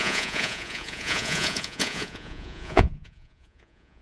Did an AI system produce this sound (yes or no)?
yes